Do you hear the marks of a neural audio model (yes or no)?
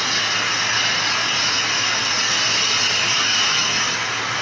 no